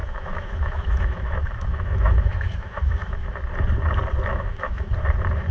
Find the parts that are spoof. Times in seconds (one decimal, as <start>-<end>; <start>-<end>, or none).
0.0-3.3; 4.3-4.9